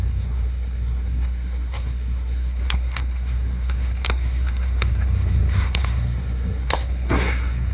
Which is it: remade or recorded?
remade